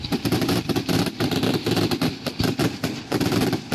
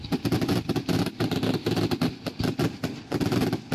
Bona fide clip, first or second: second